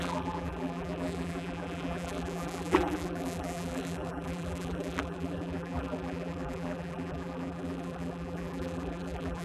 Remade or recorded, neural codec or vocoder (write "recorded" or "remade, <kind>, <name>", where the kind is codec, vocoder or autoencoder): remade, vocoder, BigVGAN v2